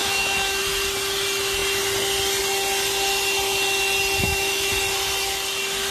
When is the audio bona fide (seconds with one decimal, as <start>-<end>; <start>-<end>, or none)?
0.6-4.2; 4.7-5.9